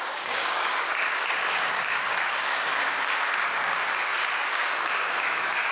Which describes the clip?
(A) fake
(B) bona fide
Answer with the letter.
A